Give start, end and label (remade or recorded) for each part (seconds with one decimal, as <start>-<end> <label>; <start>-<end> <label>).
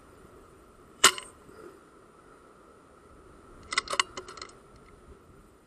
0.0-1.8 remade; 1.8-5.2 recorded; 5.2-5.7 remade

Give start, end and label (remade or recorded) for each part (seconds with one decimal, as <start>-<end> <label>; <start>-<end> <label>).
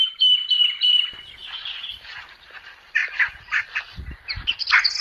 0.0-5.0 recorded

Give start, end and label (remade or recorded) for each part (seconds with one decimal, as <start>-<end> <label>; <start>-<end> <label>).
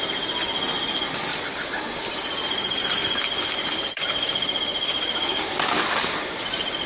0.0-1.3 recorded; 1.3-5.4 remade; 5.4-6.9 recorded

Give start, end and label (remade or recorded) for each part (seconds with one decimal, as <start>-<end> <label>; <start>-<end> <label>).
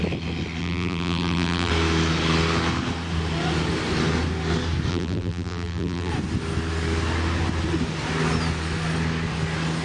0.0-0.6 recorded; 0.6-1.7 remade; 1.7-4.9 recorded; 4.9-6.1 remade; 6.1-9.8 recorded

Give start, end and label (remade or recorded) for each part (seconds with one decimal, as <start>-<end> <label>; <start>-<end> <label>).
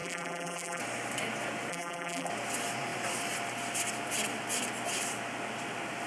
0.0-0.8 remade; 0.8-1.7 recorded; 1.7-2.3 remade; 2.3-6.1 recorded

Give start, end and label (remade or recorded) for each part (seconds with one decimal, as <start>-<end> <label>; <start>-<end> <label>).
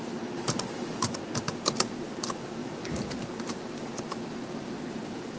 0.0-2.6 recorded; 2.6-4.0 remade; 4.0-5.4 recorded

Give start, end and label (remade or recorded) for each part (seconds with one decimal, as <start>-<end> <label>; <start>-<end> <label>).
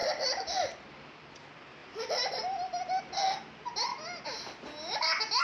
0.0-1.3 remade; 1.3-1.8 recorded; 1.8-2.4 remade; 2.4-5.4 recorded